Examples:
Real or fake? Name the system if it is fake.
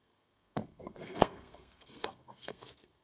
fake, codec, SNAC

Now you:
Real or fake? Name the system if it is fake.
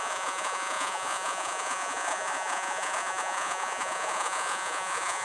fake, vocoder, Vocos